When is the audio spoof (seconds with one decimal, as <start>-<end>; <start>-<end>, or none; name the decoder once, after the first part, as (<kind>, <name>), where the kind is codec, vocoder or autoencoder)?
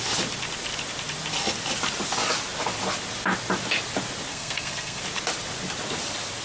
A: 4.3-5.0 (codec, SNAC)